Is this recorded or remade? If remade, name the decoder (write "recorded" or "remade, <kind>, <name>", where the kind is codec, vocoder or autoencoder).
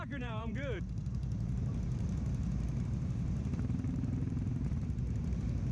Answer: remade, vocoder, BigVGAN v2